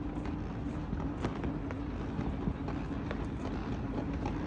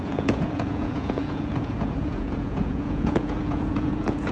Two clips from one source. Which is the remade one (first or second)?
second